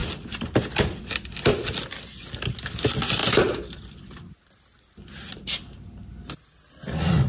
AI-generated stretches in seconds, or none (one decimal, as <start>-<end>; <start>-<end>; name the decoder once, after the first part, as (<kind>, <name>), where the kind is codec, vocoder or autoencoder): none